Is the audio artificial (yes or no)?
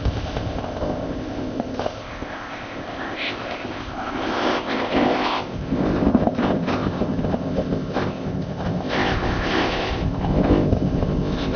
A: yes